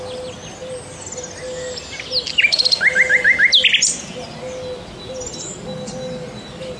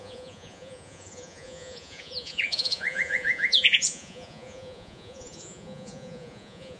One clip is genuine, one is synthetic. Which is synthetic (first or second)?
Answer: second